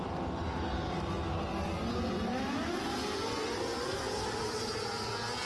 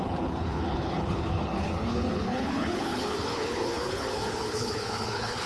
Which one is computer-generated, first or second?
second